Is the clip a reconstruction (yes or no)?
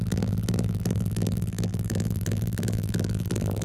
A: yes